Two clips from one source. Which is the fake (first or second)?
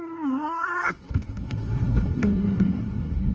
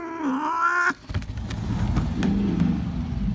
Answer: first